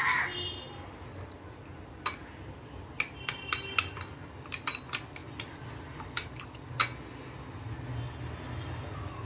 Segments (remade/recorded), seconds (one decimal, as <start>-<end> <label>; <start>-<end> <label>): 0.0-9.3 recorded